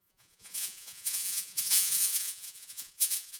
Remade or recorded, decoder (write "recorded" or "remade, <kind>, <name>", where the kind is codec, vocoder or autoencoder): remade, vocoder, Vocos